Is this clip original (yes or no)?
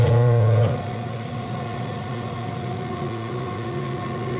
no